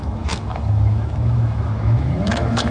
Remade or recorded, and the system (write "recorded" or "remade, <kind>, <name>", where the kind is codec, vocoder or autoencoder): remade, autoencoder, DAC-VAE